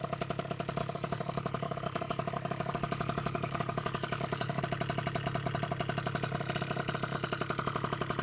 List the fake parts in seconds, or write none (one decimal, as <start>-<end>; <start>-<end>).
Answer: 0.8-4.6